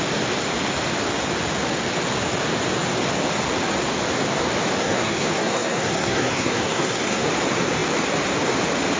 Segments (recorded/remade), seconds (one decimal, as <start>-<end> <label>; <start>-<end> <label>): 0.0-4.8 recorded; 4.8-7.3 remade; 7.3-9.0 recorded